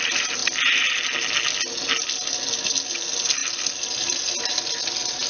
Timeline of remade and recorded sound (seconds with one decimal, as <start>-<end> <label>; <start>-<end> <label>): 0.0-5.3 recorded